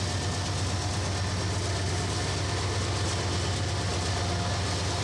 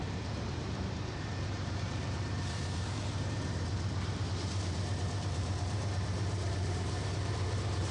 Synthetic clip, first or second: second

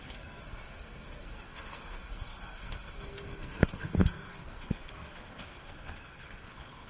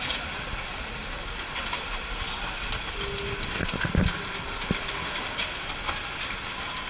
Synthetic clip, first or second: first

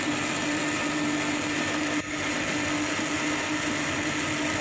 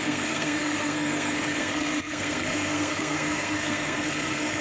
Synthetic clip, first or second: second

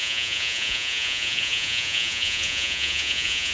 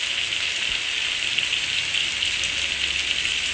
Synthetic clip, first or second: first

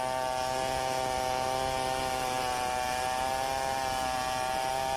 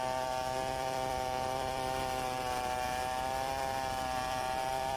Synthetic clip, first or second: second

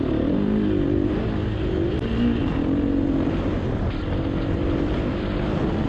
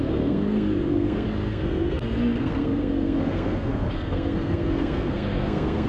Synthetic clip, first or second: second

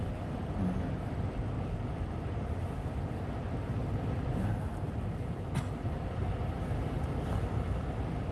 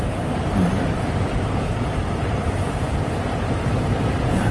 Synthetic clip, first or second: second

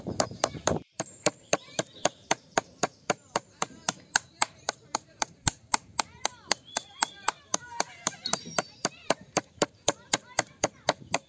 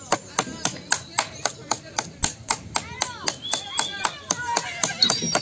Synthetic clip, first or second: first